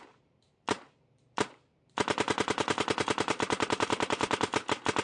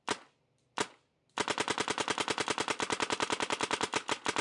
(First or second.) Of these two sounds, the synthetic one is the first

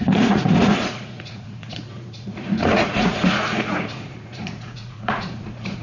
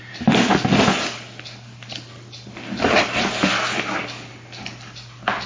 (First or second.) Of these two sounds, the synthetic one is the first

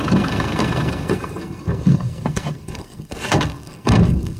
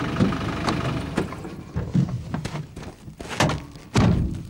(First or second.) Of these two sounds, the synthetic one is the first